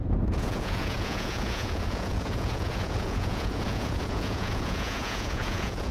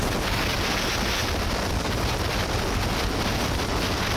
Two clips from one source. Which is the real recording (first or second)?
second